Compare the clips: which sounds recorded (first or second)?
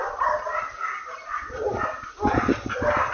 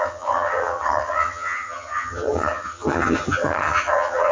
first